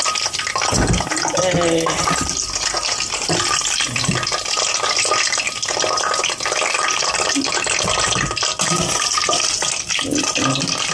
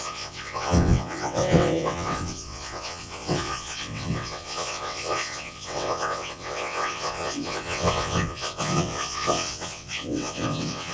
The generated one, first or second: second